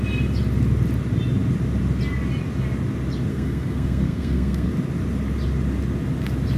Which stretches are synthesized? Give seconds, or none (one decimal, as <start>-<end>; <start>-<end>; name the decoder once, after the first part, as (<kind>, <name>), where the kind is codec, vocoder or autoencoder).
3.3-4.7 (codec, SNAC)